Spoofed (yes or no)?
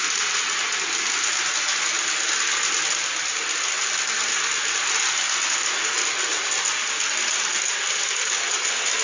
no